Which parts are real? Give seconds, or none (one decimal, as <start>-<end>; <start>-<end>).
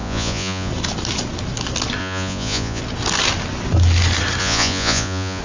0.7-2.0; 2.8-4.4